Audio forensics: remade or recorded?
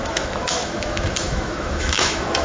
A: remade